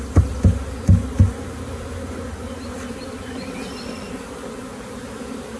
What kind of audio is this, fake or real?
real